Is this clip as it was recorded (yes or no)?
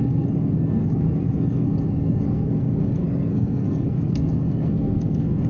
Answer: no